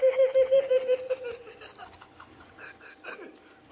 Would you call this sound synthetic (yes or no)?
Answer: yes